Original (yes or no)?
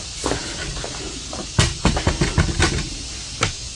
yes